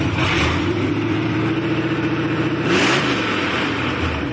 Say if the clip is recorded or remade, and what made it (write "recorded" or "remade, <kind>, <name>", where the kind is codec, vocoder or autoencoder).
remade, vocoder, BigVGAN v2